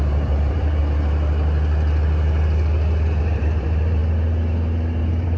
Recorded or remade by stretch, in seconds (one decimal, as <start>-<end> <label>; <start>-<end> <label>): 0.0-0.8 remade; 0.8-3.2 recorded; 3.2-4.0 remade; 4.0-5.0 recorded; 5.0-5.4 remade